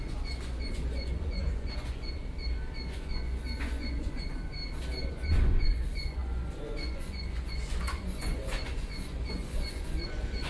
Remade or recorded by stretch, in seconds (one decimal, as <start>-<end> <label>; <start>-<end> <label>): 0.0-2.2 remade; 2.2-2.9 recorded; 2.9-4.6 remade; 4.6-5.1 recorded; 5.1-10.5 remade